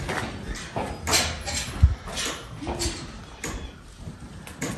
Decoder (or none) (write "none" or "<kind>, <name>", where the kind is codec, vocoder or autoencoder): none